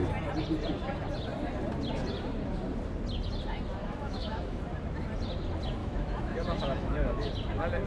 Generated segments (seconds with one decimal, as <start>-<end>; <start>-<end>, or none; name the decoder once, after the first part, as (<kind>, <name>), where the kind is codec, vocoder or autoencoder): 3.8-4.6 (autoencoder, DAC-VAE); 5.8-7.3